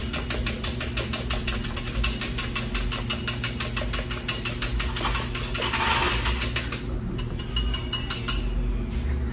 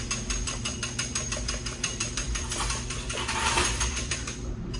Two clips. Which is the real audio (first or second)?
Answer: first